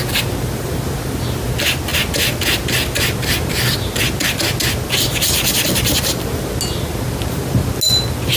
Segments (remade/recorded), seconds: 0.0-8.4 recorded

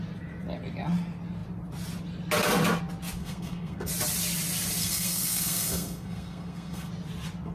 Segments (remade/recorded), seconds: 0.0-3.2 recorded; 3.2-3.9 remade; 3.9-4.8 recorded; 4.8-6.9 remade; 6.9-7.5 recorded

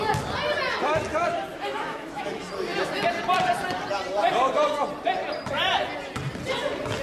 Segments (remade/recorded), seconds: 0.0-1.5 recorded; 1.5-2.2 remade; 2.2-7.0 recorded

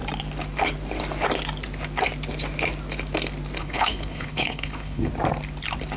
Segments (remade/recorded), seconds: 0.0-3.6 recorded; 3.6-5.1 remade; 5.1-6.0 recorded

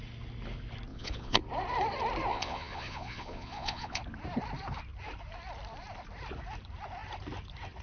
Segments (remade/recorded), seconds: 0.0-0.9 recorded; 0.9-1.4 remade; 1.4-2.3 recorded; 2.3-4.0 remade; 4.0-7.8 recorded

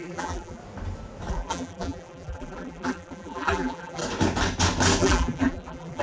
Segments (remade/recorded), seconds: 0.0-0.6 remade; 0.6-1.3 recorded; 1.3-4.0 remade; 4.0-5.0 recorded; 5.0-6.0 remade

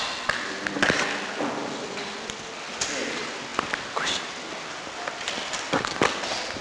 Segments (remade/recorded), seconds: 0.0-6.6 recorded

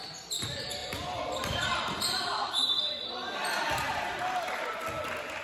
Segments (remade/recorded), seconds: 0.0-0.8 recorded; 0.8-3.6 remade; 3.6-5.4 recorded